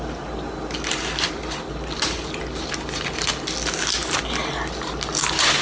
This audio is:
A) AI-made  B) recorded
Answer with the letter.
B